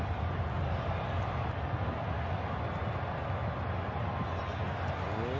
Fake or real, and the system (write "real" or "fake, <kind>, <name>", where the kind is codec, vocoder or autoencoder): real